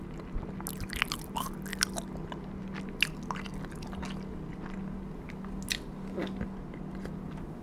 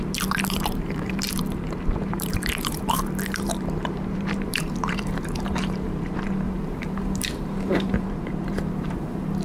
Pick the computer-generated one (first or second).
second